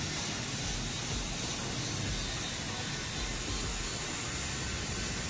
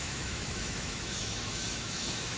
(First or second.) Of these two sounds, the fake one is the second